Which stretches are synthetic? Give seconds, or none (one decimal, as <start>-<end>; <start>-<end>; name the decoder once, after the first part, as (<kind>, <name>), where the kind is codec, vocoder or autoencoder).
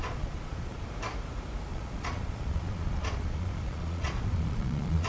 0.0-0.9 (vocoder, Vocos); 1.7-5.1